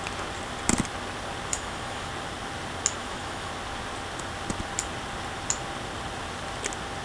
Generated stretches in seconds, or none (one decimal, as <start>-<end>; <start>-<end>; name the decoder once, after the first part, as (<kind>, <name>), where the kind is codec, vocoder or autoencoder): 1.5-2.1 (autoencoder, DAC-VAE); 3.0-3.5